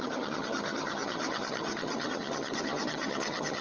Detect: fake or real fake